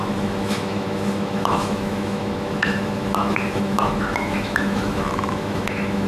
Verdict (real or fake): fake